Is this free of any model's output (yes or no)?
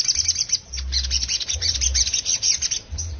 yes